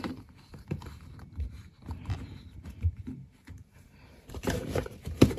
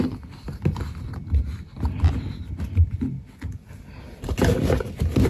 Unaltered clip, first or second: second